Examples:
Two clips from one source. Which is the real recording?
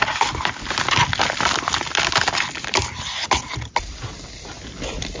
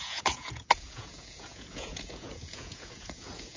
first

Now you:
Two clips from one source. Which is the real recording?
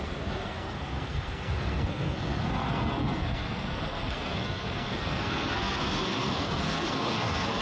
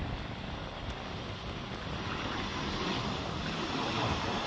second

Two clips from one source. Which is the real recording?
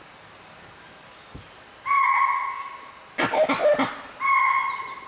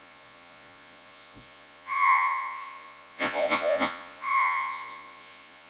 first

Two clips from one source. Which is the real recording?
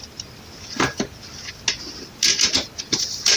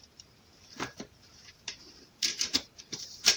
first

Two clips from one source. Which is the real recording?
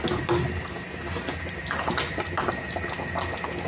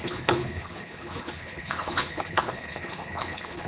first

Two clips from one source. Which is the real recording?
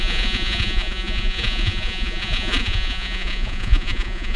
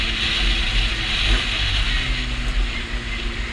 second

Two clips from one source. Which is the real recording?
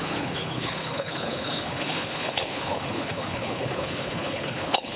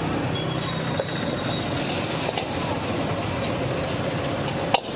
second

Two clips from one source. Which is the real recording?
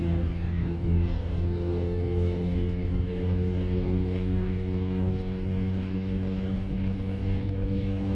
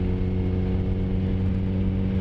second